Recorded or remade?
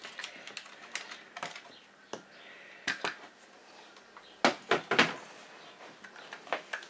recorded